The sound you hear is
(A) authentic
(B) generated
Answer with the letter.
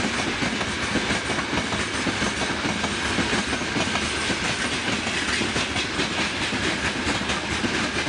A